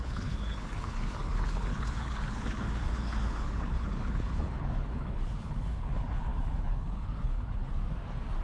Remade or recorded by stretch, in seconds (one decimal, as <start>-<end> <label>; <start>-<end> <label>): 0.0-7.7 remade; 7.7-8.4 recorded